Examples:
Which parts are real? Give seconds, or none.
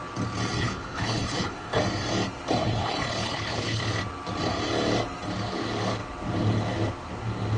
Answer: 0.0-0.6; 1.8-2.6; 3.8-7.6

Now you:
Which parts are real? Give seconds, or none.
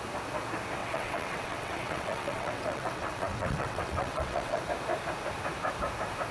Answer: 0.0-0.8; 4.6-6.3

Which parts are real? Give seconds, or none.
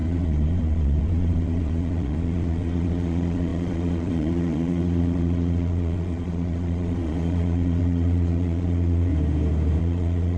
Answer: 9.1-9.8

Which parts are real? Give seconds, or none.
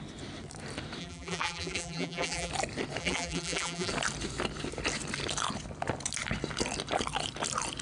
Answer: 0.0-1.0; 2.5-3.0; 3.9-7.8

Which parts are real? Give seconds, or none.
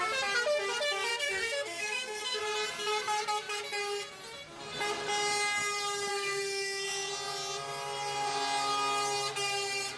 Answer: 0.0-1.1; 2.4-6.1; 7.1-10.0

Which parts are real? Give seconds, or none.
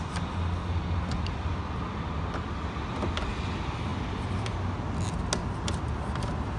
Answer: 0.0-6.6